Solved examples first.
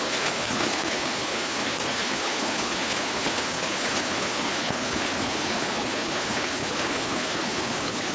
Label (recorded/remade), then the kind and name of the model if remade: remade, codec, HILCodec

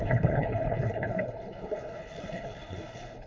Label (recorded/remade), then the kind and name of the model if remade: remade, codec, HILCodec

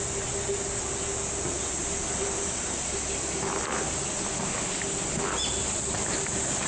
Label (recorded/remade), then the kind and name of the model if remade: recorded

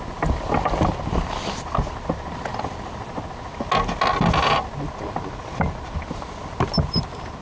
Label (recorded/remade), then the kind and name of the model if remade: recorded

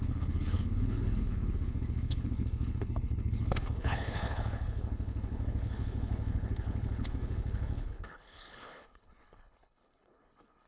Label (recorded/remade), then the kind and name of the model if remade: remade, codec, HILCodec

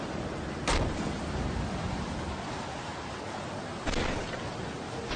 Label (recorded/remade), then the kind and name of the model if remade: recorded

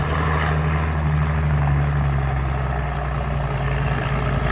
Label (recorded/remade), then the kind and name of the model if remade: recorded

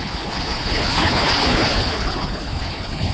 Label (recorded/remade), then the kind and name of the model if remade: remade, codec, HILCodec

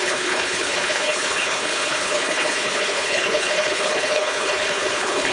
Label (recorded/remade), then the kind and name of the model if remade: remade, codec, HILCodec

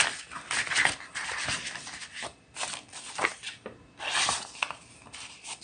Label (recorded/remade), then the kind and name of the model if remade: recorded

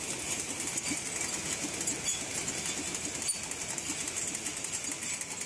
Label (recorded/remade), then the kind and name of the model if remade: recorded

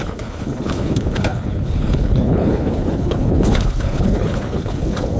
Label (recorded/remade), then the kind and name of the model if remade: remade, codec, HILCodec